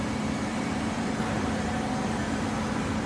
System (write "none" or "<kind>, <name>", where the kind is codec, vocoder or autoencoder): vocoder, BigVGAN v2